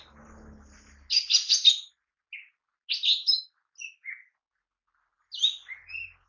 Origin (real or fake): real